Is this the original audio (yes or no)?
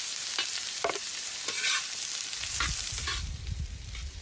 yes